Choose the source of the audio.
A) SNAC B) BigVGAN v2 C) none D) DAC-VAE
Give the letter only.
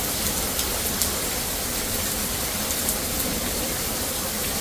C